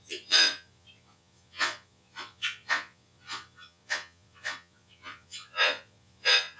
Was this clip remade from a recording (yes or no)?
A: yes